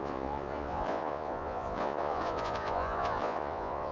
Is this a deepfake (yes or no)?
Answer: yes